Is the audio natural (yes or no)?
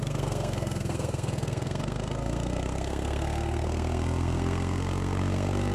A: no